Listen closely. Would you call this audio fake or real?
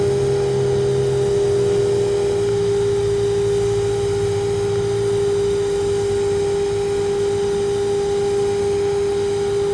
real